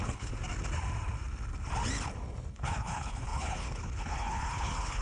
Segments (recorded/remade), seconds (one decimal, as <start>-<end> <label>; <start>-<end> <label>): 0.0-0.4 remade; 0.4-2.5 recorded; 2.5-5.0 remade